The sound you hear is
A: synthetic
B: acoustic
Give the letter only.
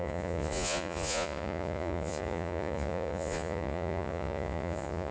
A